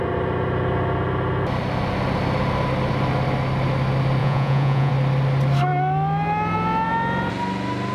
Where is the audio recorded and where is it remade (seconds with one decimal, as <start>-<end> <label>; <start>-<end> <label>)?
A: 0.0-4.2 recorded; 4.2-4.9 remade; 4.9-7.9 recorded